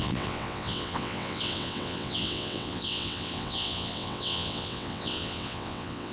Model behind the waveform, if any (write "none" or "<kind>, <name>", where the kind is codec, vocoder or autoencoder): vocoder, WaveNeXt